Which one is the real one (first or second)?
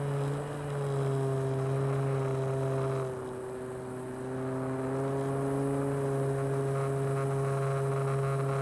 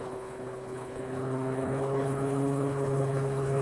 first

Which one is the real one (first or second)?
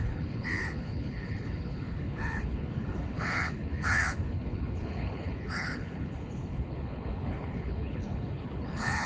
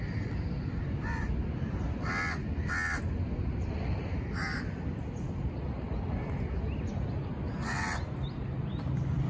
second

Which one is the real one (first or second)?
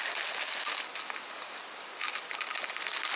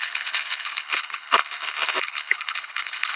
first